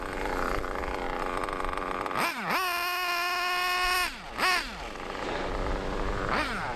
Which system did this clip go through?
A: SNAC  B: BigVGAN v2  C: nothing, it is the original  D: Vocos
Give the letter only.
C